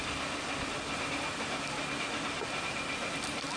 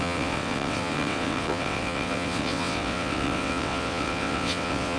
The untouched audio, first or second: first